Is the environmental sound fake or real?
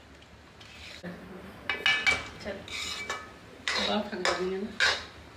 real